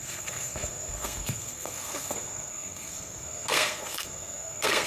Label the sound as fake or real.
fake